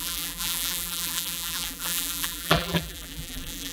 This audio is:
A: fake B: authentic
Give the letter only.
A